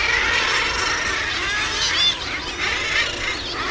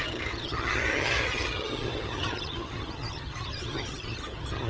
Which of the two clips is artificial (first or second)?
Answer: second